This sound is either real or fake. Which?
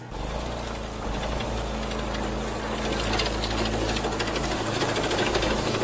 real